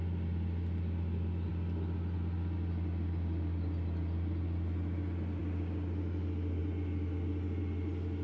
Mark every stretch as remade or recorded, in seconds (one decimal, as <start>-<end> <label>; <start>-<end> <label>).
0.0-8.2 recorded